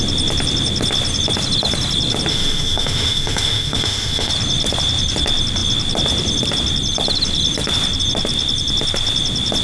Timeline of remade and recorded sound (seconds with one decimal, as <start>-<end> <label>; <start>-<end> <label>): 0.0-2.3 recorded; 2.3-4.3 remade; 4.3-9.6 recorded